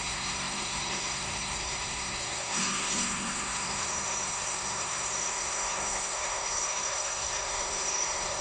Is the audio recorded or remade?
remade